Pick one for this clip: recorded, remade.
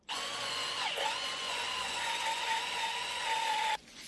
remade